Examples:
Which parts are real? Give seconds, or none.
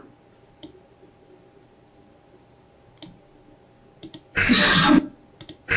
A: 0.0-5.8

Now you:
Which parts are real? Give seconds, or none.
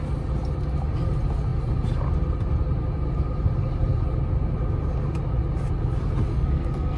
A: 0.0-6.3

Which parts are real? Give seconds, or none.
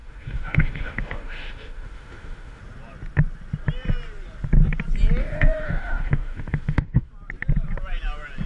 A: 2.6-5.2; 7.1-8.5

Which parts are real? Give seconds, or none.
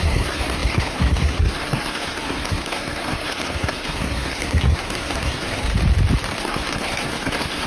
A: 5.7-6.4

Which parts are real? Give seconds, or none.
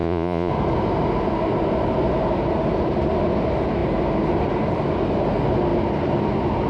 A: 0.5-6.7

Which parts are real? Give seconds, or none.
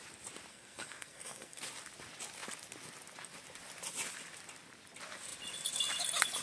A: 0.0-0.5; 1.6-6.4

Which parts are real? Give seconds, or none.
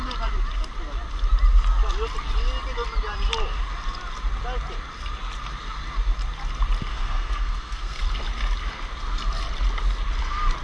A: 0.0-6.9; 8.0-10.6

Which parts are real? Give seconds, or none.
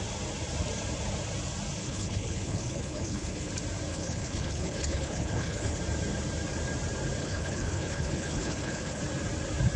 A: 0.0-1.8; 3.5-3.9; 5.8-7.2; 9.0-9.8